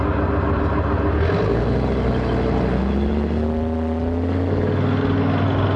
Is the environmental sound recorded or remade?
recorded